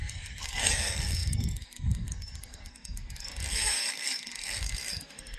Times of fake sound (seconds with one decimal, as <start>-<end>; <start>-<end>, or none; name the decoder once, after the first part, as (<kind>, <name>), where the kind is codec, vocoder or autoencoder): 0.0-5.4 (codec, SNAC)